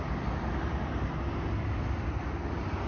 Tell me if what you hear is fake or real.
real